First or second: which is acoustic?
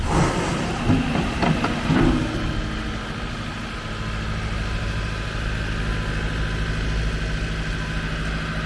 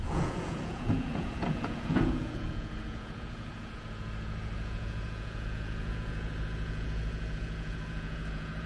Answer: first